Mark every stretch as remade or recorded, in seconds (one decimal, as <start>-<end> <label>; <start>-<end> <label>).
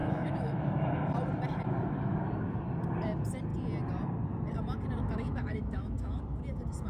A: 0.0-0.8 remade; 0.8-5.0 recorded; 5.0-6.2 remade; 6.2-6.9 recorded